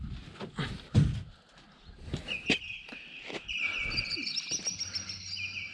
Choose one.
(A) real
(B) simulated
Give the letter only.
A